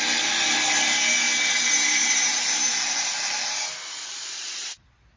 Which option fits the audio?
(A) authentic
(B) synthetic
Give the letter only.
A